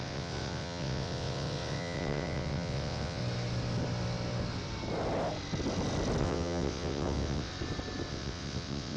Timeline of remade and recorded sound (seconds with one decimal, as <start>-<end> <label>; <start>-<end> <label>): 0.0-3.2 remade; 3.2-6.2 recorded; 6.2-7.5 remade; 7.5-8.1 recorded; 8.1-9.0 remade